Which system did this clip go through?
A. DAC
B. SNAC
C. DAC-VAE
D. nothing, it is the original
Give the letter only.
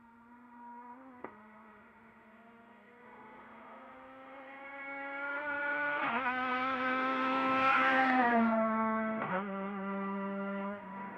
C